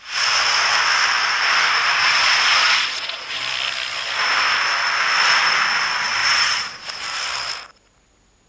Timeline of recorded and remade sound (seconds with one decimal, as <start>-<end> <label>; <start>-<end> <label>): 0.0-2.0 recorded; 2.0-3.4 remade; 3.4-6.2 recorded; 6.2-6.9 remade; 6.9-8.5 recorded